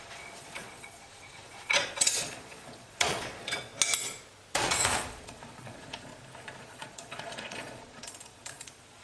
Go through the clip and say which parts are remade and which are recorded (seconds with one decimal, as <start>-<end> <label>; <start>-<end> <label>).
0.0-3.7 remade; 3.7-4.5 recorded; 4.5-6.1 remade; 6.1-6.6 recorded; 6.6-9.0 remade